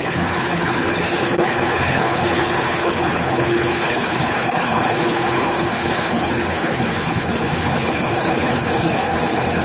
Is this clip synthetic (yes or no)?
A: yes